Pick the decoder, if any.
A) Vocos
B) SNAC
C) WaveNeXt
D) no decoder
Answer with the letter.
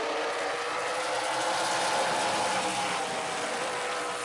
D